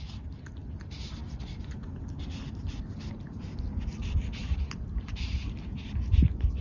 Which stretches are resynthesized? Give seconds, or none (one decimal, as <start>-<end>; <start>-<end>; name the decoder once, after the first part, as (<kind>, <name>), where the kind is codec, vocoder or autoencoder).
none